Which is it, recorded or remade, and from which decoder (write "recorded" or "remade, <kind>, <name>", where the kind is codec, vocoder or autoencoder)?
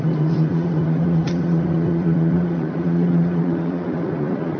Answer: remade, vocoder, Vocos